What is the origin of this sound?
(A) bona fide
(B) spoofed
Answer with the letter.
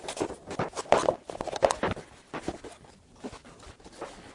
A